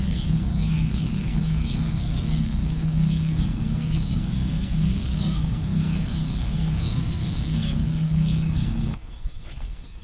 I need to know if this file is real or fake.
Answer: fake